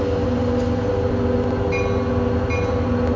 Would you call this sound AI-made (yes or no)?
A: no